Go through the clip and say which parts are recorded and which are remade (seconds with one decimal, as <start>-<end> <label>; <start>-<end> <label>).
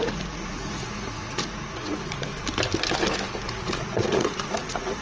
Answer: 0.0-2.3 remade; 2.3-3.5 recorded; 3.5-5.0 remade